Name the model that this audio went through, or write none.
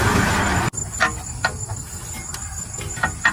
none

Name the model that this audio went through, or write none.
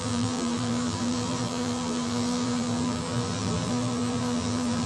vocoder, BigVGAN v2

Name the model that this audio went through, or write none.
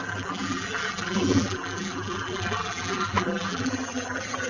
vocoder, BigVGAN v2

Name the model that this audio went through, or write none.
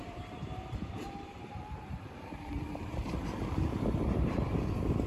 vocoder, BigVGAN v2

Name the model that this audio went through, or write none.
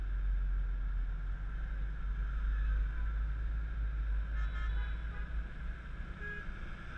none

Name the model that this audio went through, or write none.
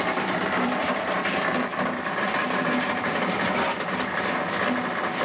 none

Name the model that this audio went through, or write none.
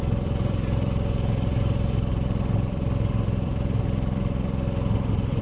vocoder, BigVGAN v2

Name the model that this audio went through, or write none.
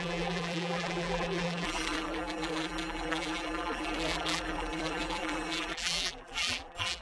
vocoder, BigVGAN v2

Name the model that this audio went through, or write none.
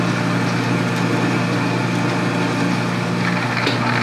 none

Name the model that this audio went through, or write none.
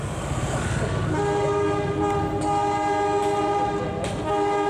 none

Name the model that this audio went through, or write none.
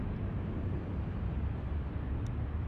none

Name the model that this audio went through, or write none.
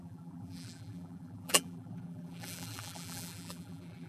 vocoder, BigVGAN v2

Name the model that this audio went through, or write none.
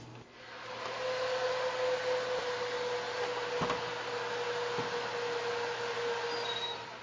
none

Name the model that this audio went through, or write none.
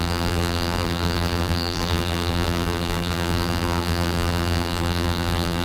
vocoder, BigVGAN v2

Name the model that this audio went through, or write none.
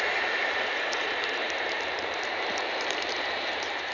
vocoder, BigVGAN v2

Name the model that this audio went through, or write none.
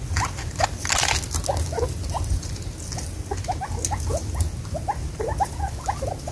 none